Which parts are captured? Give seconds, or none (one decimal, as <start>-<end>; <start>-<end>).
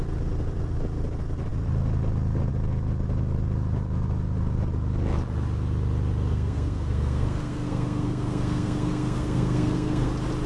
0.0-6.3; 10.1-10.5